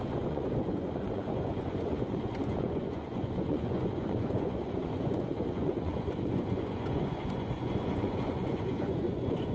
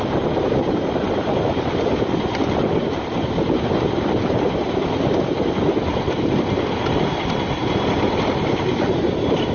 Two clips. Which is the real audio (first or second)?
second